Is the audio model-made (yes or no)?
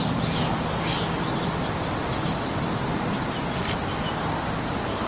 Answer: no